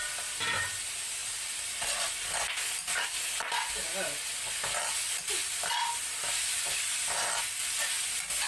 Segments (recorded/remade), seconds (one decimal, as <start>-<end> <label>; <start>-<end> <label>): 0.0-1.2 recorded; 1.2-2.3 remade; 2.3-5.4 recorded; 5.4-6.6 remade; 6.6-8.5 recorded